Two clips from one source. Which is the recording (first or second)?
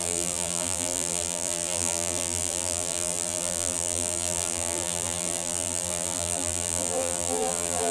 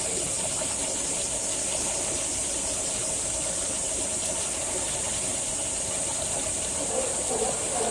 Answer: second